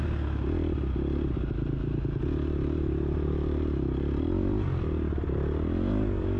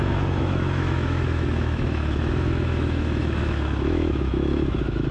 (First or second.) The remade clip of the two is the second